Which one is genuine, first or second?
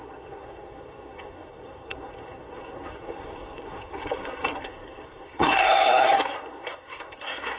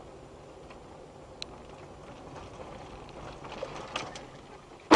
second